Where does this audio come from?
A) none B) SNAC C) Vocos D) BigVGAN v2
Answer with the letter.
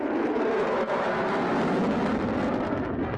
A